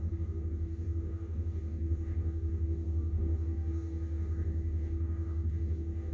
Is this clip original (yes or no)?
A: no